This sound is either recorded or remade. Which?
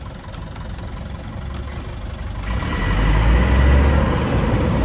recorded